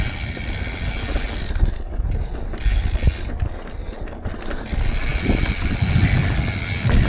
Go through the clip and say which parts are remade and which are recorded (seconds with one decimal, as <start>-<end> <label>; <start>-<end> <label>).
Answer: 0.0-7.1 recorded